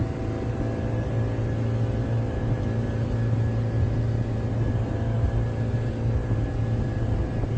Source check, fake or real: real